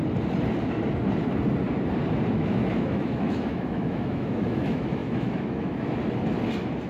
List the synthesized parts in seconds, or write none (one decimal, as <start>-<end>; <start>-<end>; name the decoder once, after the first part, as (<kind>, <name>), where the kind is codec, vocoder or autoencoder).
2.3-6.0 (autoencoder, DAC-VAE)